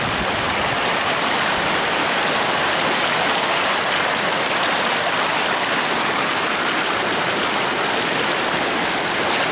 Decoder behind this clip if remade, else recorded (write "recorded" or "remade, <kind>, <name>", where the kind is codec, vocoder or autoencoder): recorded